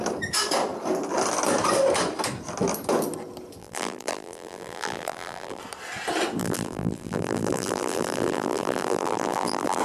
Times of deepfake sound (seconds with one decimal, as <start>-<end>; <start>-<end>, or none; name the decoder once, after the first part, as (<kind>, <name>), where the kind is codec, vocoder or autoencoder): 3.6-5.6 (vocoder, BigVGAN v2); 6.4-9.8